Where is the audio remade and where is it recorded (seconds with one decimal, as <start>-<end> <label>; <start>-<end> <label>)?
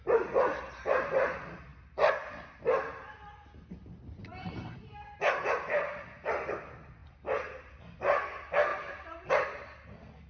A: 0.0-8.7 recorded; 8.7-9.3 remade; 9.3-10.3 recorded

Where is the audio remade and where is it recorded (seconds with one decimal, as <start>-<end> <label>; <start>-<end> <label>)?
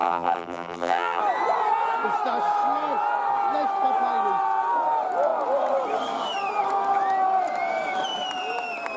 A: 0.0-1.2 remade; 1.2-9.0 recorded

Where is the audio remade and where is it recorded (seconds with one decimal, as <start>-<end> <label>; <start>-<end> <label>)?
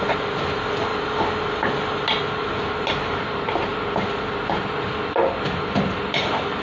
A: 0.0-6.6 recorded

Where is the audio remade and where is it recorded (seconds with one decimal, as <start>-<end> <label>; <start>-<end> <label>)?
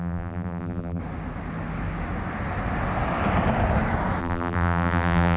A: 0.0-1.0 remade; 1.0-4.2 recorded; 4.2-5.4 remade